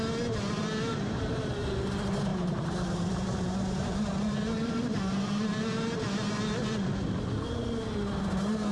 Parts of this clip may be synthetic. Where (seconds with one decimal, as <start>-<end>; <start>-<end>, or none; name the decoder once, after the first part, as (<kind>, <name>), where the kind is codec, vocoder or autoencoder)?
0.9-1.5 (vocoder, BigVGAN v2); 2.3-5.6